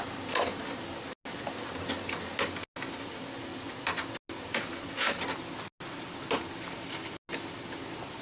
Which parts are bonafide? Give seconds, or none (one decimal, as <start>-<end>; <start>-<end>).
0.0-8.2